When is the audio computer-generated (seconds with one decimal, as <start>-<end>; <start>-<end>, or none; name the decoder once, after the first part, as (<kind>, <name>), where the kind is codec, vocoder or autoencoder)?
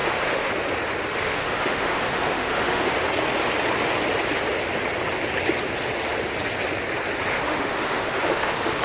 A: 0.0-0.5 (autoencoder, DAC-VAE); 1.1-2.9; 7.3-8.8